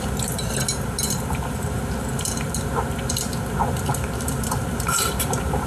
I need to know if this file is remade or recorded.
remade